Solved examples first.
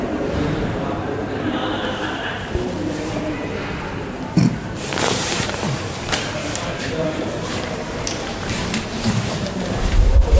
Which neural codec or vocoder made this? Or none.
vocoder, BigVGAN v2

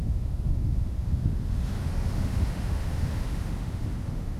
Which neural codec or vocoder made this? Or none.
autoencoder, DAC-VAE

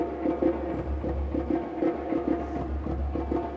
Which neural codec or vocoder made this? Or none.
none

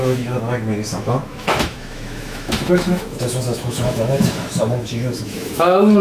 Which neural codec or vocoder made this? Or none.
autoencoder, DAC-VAE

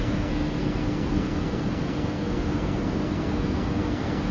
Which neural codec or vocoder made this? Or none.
codec, SNAC